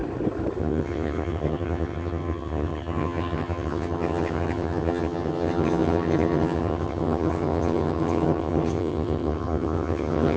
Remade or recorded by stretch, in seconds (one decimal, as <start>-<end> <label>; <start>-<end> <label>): 0.0-0.6 recorded; 0.6-10.4 remade